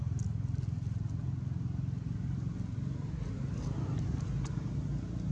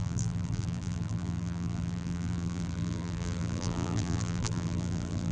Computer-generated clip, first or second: second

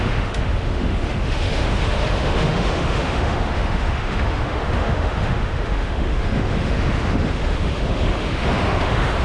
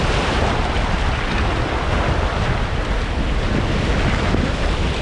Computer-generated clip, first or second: first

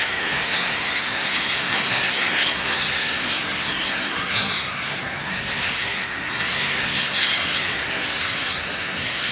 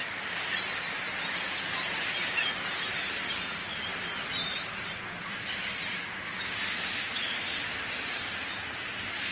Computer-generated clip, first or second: first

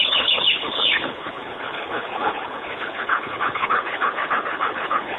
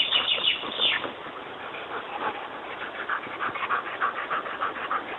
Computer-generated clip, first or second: first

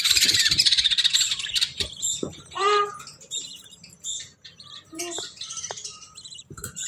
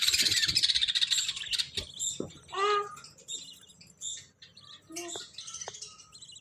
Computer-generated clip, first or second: first